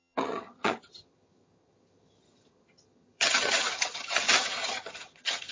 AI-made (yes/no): yes